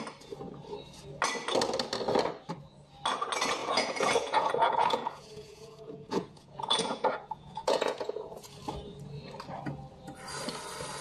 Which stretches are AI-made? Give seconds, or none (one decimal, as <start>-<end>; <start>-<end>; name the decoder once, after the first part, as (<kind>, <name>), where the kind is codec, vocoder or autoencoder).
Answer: 3.6-8.5 (vocoder, Vocos)